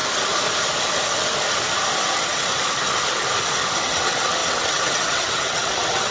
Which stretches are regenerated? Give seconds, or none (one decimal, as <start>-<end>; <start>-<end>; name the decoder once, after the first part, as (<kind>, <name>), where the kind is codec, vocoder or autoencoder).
2.1-2.5 (vocoder, WaveNeXt); 3.8-6.1